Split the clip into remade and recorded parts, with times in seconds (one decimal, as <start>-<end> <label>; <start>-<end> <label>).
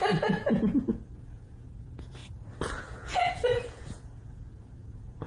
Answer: 0.0-2.2 remade; 2.2-2.8 recorded; 2.8-5.3 remade